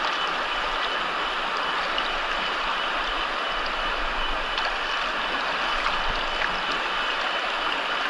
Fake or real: real